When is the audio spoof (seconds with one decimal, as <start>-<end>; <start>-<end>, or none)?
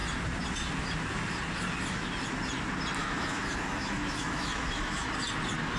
3.0-5.1